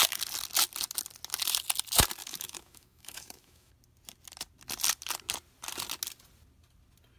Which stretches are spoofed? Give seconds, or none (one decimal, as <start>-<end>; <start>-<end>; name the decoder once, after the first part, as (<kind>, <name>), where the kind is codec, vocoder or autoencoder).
2.2-3.7 (autoencoder, DAC-VAE)